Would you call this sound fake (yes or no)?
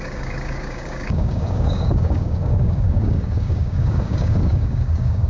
yes